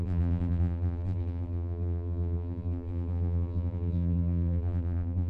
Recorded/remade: remade